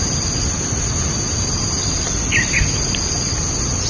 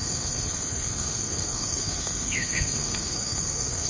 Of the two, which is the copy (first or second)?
second